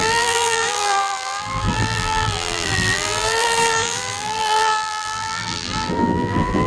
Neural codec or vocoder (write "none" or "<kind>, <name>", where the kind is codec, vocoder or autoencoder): vocoder, BigVGAN v2